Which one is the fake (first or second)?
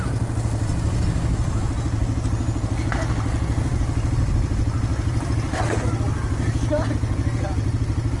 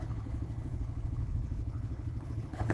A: second